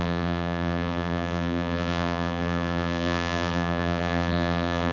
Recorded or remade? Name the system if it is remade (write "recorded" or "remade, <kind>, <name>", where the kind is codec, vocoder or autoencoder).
remade, vocoder, BigVGAN v2